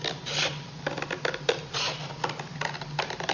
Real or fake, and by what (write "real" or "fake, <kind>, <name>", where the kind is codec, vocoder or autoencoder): real